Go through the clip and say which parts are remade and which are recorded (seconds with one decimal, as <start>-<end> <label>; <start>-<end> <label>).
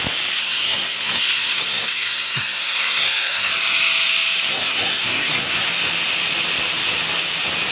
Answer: 0.0-0.4 recorded; 0.4-3.5 remade; 3.5-4.5 recorded; 4.5-5.7 remade; 5.7-7.7 recorded